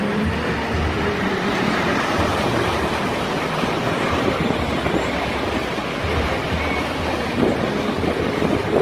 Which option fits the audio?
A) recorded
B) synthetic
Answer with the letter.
A